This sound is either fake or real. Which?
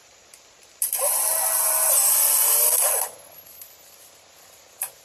real